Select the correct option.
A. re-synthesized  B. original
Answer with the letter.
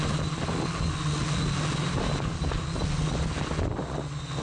B